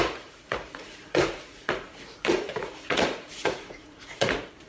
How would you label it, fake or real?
fake